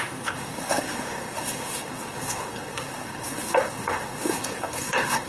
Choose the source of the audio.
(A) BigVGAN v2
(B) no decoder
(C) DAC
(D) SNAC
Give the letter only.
D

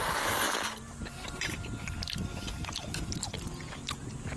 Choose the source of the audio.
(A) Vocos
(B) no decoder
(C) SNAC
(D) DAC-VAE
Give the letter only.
B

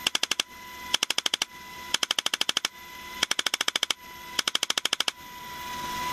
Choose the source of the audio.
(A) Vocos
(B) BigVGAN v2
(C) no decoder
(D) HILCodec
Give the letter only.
C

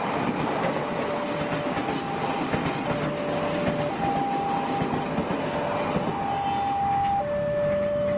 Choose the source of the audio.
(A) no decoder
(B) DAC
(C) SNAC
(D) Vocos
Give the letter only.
A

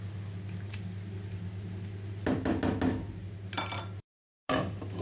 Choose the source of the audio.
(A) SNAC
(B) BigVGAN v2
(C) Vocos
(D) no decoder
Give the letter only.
D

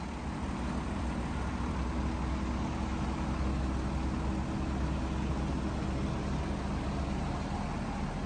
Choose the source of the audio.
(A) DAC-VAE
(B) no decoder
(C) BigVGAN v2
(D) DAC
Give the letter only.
B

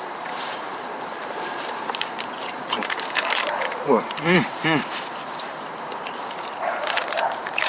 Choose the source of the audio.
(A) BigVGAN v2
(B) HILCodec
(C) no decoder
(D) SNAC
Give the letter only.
A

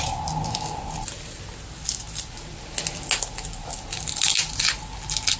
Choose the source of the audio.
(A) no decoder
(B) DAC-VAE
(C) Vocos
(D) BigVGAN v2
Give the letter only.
A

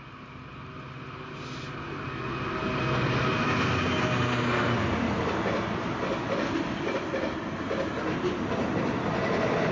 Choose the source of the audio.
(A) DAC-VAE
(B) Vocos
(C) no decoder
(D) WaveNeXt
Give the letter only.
C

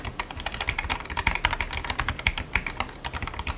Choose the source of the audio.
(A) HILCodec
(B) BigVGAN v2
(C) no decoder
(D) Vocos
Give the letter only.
C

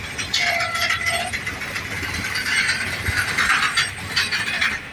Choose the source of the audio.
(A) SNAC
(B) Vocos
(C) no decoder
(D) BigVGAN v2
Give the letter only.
D